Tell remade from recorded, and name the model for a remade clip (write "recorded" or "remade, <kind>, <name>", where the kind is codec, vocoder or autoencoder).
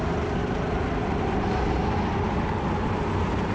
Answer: recorded